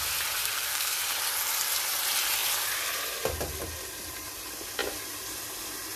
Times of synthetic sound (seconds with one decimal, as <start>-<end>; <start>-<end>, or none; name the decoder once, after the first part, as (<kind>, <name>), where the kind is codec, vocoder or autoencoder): 0.4-1.0 (codec, SNAC)